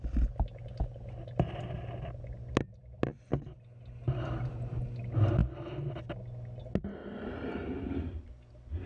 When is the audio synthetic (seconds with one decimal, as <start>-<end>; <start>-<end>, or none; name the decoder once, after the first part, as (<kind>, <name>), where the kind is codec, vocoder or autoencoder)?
none